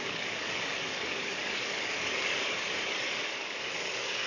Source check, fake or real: fake